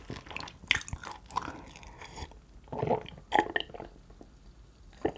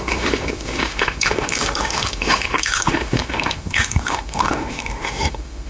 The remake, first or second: second